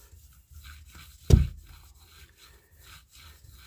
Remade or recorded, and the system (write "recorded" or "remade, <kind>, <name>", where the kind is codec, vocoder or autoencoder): recorded